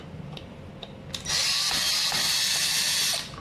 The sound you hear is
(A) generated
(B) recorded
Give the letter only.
B